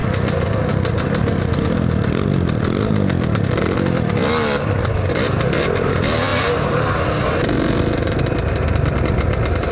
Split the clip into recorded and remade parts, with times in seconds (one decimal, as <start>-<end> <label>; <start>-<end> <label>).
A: 0.0-9.7 recorded

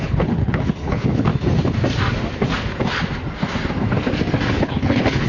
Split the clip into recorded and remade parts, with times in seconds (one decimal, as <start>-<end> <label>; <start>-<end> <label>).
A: 0.0-1.3 remade; 1.3-4.5 recorded; 4.5-5.3 remade